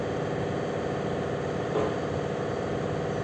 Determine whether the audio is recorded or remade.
recorded